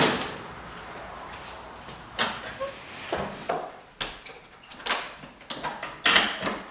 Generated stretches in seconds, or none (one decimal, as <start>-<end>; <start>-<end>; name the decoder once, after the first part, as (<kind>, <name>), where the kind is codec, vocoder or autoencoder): 3.4-3.9 (vocoder, WaveNeXt); 4.3-4.8